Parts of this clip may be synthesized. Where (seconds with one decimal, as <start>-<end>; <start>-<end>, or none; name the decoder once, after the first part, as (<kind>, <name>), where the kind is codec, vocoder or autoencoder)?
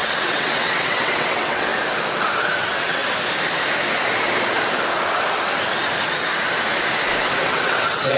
0.0-1.7 (vocoder, WaveNeXt); 2.3-3.0; 7.4-8.2